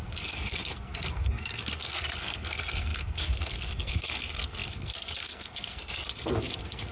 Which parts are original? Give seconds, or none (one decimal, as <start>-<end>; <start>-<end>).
none